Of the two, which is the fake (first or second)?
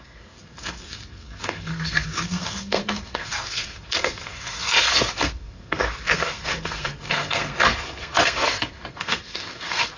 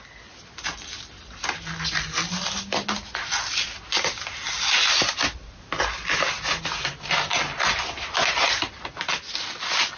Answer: first